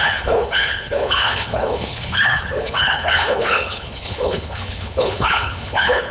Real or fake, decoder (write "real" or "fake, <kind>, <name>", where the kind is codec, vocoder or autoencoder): fake, codec, HILCodec